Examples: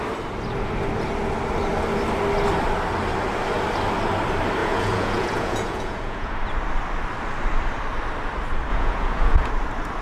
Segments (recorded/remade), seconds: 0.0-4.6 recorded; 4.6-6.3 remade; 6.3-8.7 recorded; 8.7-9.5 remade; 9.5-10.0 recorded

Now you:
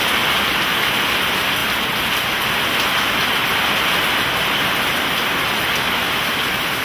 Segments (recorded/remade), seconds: 0.0-6.8 recorded

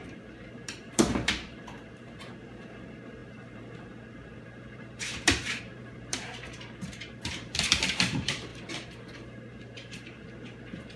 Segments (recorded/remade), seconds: 0.0-11.0 remade

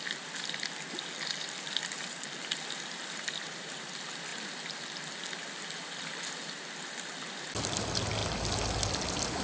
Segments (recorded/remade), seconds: 0.0-9.4 recorded

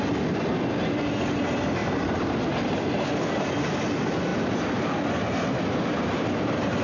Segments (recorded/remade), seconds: 0.0-6.8 recorded

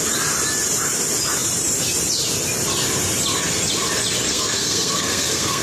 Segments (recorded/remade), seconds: 0.0-4.3 recorded; 4.3-5.6 remade